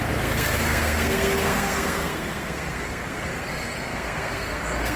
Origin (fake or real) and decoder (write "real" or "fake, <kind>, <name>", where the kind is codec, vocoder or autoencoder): fake, codec, SNAC